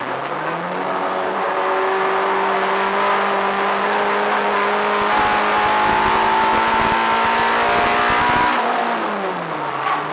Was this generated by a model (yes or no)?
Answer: no